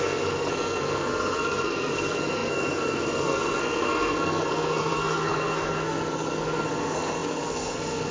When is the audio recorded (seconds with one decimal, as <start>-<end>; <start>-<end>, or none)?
none